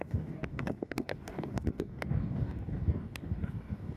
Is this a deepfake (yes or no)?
yes